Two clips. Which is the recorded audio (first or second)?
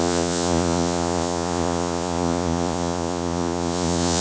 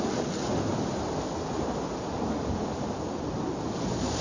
second